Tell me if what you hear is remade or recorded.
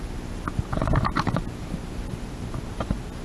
recorded